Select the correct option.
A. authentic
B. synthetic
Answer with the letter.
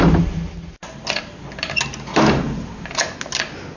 A